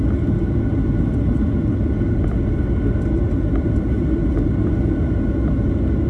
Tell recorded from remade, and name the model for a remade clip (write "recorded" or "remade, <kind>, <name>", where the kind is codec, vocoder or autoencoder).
recorded